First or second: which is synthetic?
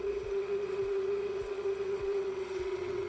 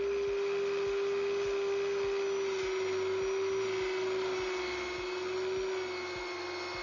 first